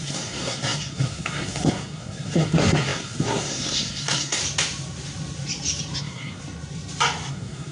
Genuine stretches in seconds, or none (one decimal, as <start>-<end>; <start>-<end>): 4.4-6.0; 6.4-7.3